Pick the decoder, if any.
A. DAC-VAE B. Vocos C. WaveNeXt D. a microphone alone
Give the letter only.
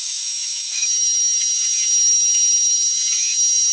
A